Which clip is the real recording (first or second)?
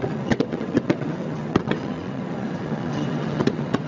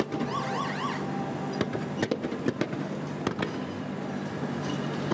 second